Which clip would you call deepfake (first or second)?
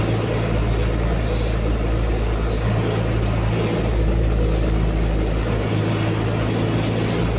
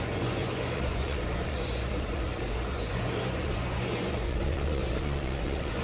second